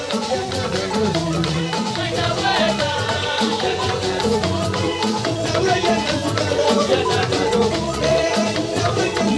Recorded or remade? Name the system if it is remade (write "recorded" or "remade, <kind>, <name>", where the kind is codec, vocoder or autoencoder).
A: remade, vocoder, Vocos